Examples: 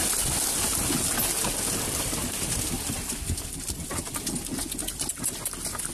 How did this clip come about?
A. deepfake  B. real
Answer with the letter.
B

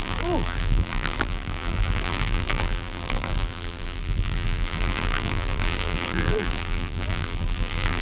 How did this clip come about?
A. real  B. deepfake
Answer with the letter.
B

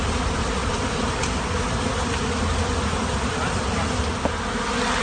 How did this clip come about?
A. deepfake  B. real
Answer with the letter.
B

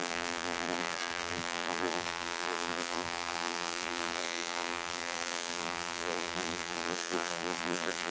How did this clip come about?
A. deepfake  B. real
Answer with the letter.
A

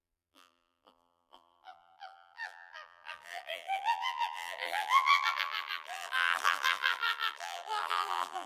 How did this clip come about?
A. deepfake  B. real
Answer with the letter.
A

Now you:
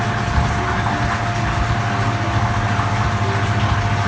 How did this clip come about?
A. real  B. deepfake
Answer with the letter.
A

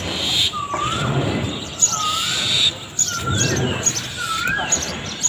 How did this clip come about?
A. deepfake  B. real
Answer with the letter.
A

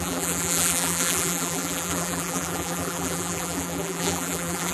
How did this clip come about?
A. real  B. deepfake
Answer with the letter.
B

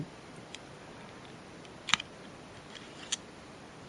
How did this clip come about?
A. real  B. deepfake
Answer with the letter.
B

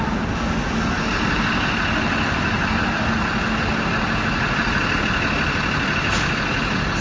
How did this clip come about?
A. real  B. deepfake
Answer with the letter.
A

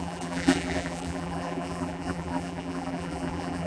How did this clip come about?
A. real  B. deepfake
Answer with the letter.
B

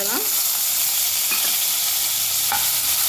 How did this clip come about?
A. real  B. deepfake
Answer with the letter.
A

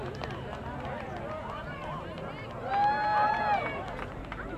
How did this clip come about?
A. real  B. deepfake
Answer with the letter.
A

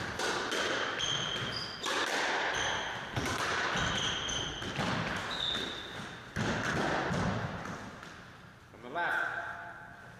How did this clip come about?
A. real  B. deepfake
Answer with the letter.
A